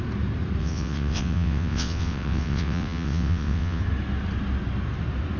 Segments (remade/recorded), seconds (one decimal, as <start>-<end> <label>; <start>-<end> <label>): 0.0-0.6 recorded; 0.6-3.8 remade; 3.8-5.4 recorded